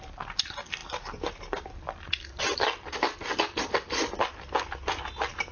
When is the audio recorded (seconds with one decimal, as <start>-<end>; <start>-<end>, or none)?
0.0-5.5